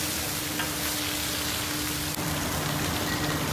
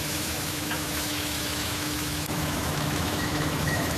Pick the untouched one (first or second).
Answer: first